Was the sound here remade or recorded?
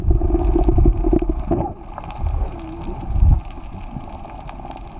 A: recorded